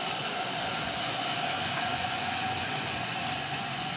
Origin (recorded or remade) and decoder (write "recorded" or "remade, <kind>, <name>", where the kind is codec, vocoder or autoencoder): remade, vocoder, Vocos